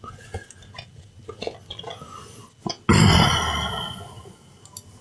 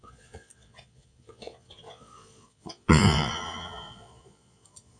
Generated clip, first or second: second